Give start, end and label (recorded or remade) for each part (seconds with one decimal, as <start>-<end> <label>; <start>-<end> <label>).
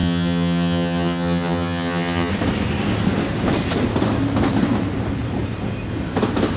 0.0-2.3 remade; 2.3-6.6 recorded